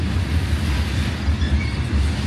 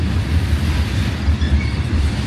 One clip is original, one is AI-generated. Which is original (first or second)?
first